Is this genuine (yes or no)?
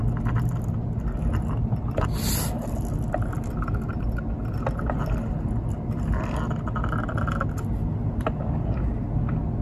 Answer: yes